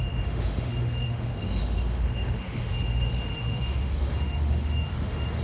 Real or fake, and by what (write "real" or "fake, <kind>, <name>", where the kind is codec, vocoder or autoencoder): fake, autoencoder, DAC-VAE